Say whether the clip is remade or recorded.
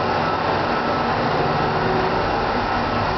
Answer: recorded